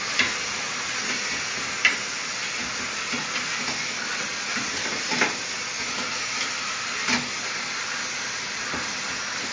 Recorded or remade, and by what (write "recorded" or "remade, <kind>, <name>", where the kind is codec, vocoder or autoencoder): recorded